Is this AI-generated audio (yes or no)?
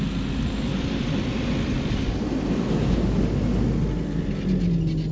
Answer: no